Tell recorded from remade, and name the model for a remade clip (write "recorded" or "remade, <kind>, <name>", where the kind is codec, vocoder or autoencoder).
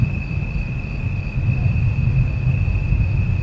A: recorded